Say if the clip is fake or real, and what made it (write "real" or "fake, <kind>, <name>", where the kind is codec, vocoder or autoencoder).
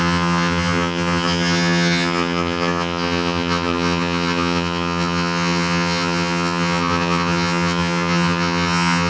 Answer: fake, vocoder, HiFi-GAN